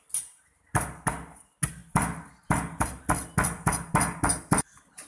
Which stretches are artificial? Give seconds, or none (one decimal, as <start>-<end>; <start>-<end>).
none